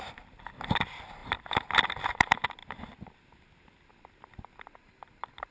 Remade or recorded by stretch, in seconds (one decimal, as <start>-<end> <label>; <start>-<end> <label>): 0.0-2.6 remade; 2.6-5.0 recorded; 5.0-5.5 remade

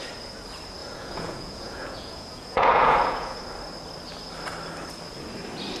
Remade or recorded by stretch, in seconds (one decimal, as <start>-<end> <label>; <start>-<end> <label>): 0.0-0.8 recorded; 0.8-3.4 remade; 3.4-5.8 recorded

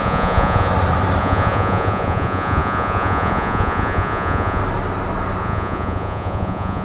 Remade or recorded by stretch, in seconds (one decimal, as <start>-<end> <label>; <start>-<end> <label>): 0.0-0.7 remade; 0.7-1.2 recorded; 1.2-4.6 remade; 4.6-5.4 recorded; 5.4-6.8 remade

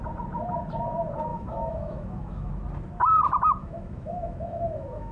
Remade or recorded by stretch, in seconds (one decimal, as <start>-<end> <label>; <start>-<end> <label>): 0.0-1.3 recorded; 1.3-2.5 remade; 2.5-3.6 recorded; 3.6-5.1 remade

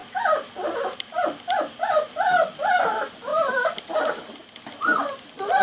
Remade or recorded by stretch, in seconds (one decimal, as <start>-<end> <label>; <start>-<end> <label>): 0.0-5.6 recorded

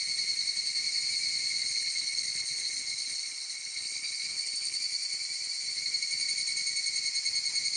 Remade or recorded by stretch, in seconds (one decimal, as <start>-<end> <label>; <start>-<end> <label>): 0.0-1.6 recorded; 1.6-4.8 remade; 4.8-7.8 recorded

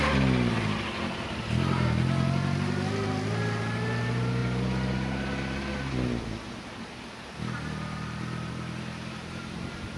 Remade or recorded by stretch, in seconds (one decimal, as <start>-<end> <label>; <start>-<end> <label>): 0.0-10.0 recorded